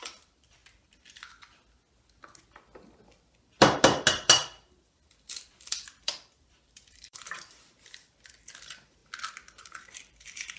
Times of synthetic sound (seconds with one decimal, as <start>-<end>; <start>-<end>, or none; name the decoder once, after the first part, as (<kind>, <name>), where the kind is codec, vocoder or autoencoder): 0.0-0.6 (vocoder, BigVGAN v2); 4.8-9.0; 9.7-10.6